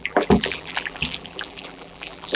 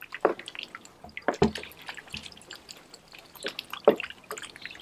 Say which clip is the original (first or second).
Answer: second